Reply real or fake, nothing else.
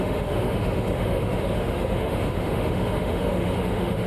fake